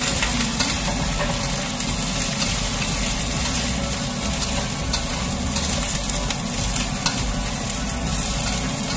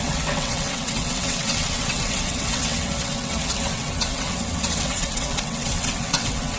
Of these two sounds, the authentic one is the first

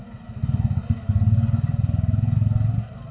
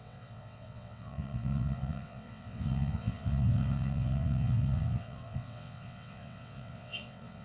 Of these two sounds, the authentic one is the first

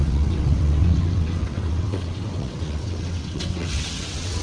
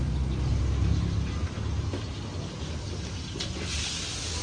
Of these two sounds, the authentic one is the second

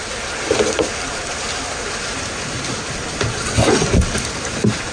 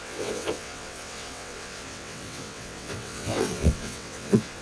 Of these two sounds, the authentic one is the first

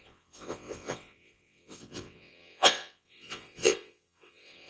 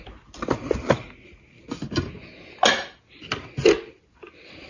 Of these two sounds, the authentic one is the second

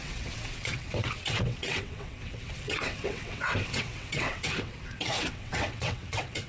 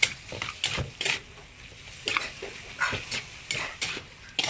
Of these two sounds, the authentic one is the second